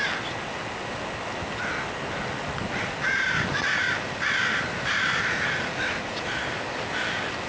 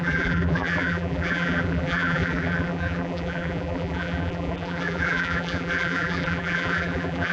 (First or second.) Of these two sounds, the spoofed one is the second